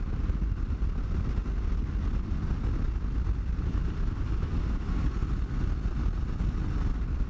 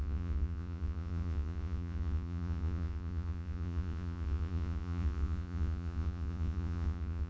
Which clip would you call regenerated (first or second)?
second